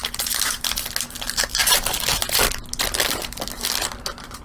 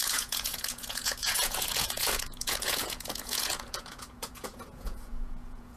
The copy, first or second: second